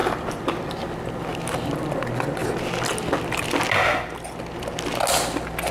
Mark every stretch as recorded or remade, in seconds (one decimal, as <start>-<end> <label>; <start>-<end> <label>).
0.0-0.7 remade; 0.7-5.7 recorded